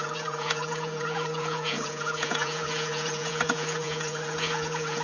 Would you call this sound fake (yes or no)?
yes